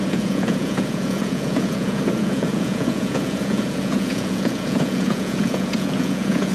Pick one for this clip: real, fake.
fake